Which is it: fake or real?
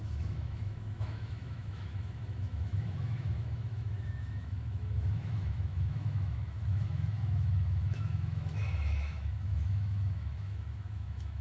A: fake